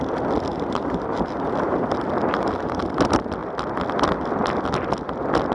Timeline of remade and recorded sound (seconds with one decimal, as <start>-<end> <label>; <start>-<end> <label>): 0.0-0.5 recorded; 0.5-2.8 remade; 2.8-5.5 recorded